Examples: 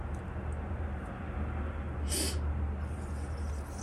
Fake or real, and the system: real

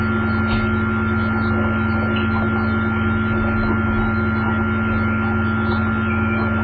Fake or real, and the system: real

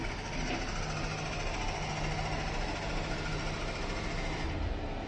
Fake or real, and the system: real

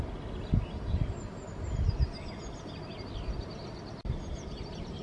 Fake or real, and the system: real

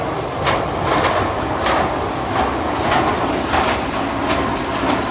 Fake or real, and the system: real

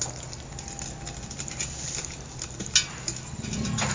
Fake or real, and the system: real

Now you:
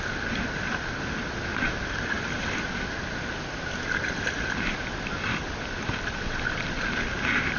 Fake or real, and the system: real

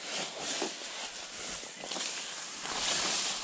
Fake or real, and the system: real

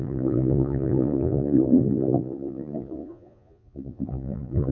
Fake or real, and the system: fake, vocoder, Vocos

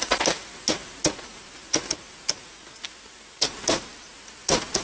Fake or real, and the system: real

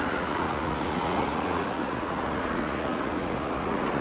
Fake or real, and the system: fake, vocoder, Vocos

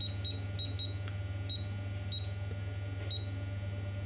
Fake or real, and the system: real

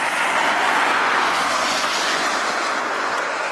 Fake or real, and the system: fake, vocoder, Vocos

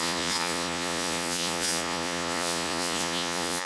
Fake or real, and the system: fake, vocoder, Vocos